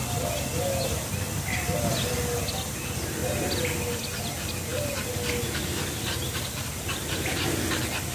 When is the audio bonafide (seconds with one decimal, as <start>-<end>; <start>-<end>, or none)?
0.0-8.1